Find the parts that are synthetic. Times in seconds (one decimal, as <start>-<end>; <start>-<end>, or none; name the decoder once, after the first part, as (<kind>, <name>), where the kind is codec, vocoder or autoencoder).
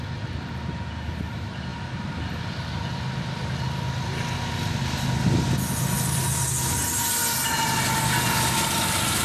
none